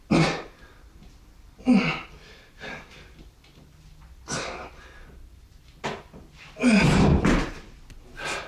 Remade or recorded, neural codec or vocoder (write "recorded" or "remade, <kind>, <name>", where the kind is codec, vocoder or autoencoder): recorded